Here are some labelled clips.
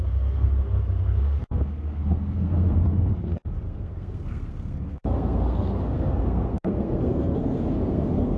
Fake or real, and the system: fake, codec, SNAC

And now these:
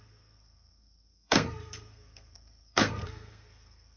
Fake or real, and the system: fake, codec, SNAC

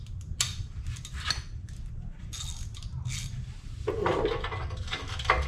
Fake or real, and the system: real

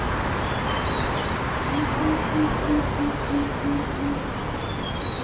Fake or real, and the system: real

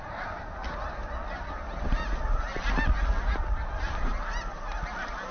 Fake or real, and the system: real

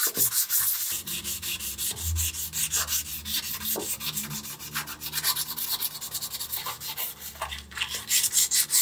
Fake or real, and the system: real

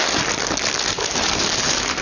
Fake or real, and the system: real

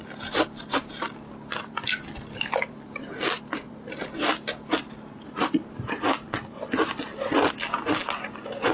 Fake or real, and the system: real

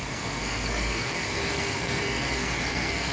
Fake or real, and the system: fake, codec, SNAC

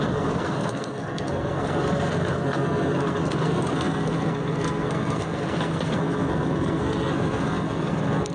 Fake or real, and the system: fake, codec, SNAC